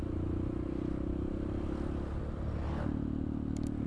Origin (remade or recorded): recorded